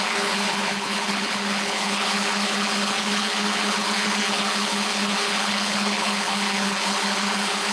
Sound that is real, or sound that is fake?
fake